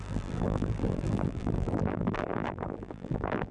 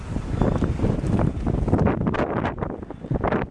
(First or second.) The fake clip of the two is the first